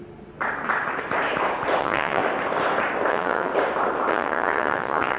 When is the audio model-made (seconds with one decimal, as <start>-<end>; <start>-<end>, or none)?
1.8-2.2; 3.1-3.5; 4.1-5.2